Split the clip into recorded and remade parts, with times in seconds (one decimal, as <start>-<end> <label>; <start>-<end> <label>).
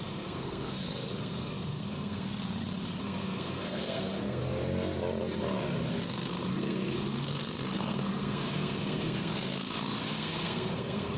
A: 0.0-2.3 remade; 2.3-3.0 recorded; 3.0-4.4 remade; 4.4-5.9 recorded; 5.9-11.2 remade